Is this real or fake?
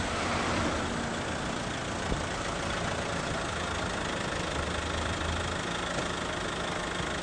real